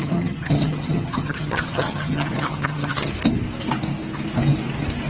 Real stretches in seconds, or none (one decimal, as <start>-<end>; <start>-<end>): 3.1-5.1